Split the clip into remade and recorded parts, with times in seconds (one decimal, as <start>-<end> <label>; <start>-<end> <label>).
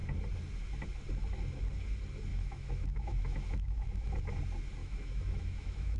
0.0-2.3 recorded; 2.3-4.2 remade; 4.2-4.8 recorded; 4.8-6.0 remade